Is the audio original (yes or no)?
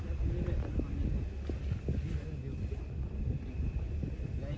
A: yes